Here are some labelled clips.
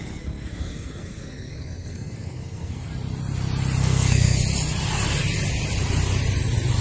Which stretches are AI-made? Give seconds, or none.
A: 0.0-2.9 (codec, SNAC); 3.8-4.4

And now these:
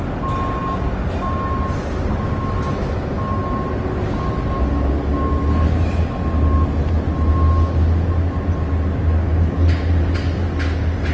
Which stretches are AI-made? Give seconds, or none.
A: none

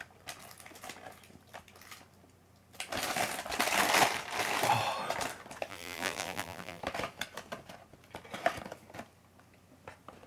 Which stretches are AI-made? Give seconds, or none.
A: 5.7-6.8 (vocoder, BigVGAN v2)